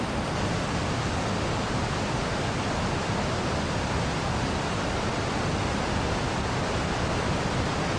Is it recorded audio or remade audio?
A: recorded